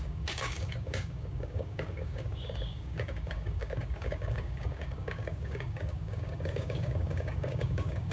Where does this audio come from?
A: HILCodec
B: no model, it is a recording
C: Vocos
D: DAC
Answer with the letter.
D